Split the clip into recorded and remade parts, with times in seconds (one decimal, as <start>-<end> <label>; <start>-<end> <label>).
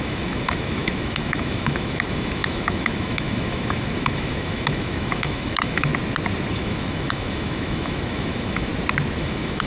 0.0-5.9 remade; 5.9-6.5 recorded; 6.5-8.7 remade; 8.7-9.2 recorded; 9.2-9.7 remade